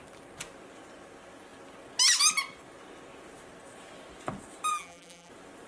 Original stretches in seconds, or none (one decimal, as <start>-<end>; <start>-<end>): 0.0-4.7; 5.3-5.7